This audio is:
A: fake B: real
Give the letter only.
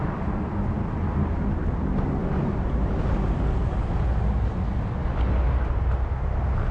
B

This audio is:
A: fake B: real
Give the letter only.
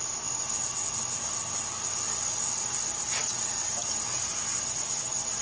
B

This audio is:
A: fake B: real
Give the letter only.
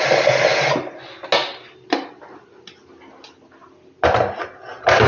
B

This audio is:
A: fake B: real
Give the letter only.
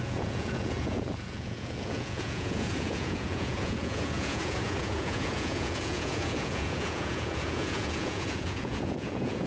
A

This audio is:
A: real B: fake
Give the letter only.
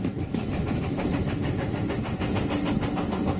A